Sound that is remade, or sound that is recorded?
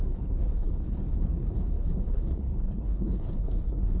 remade